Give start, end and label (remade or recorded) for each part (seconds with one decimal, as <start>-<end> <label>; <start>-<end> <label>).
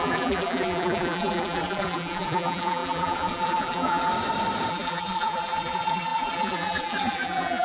0.0-4.1 remade; 4.1-4.7 recorded; 4.7-7.6 remade